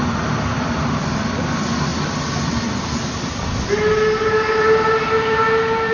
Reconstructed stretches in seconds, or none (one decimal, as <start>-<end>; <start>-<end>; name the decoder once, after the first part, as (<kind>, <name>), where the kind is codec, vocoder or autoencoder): none